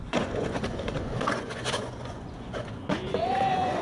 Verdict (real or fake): fake